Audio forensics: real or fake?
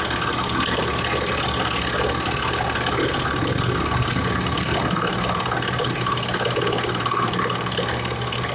real